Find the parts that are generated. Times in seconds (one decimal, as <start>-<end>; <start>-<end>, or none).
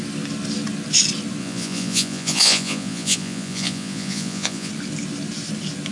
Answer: 1.4-4.7